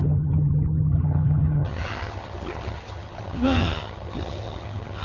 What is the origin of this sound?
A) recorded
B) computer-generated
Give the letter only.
B